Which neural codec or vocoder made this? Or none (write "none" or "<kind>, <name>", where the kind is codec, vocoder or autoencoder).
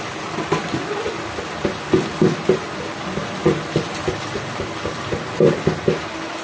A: none